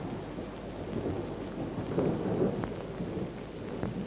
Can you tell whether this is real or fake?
real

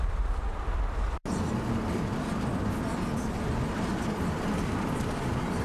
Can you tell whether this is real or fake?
real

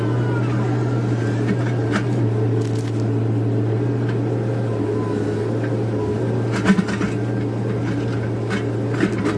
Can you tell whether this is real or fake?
real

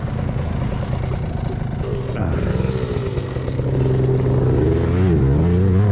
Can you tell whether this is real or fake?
real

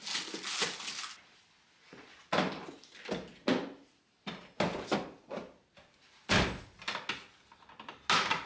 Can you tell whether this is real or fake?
real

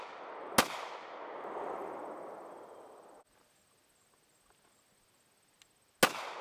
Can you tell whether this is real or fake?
real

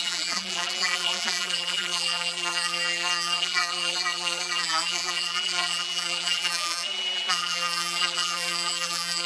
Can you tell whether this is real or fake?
fake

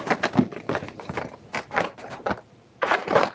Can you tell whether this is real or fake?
fake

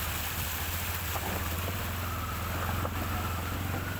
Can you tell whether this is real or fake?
real